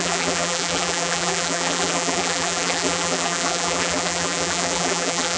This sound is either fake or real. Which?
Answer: fake